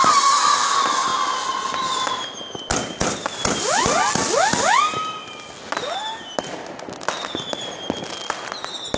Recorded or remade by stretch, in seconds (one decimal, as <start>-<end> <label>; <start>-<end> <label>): 0.0-1.1 remade; 1.1-6.0 recorded; 6.0-9.0 remade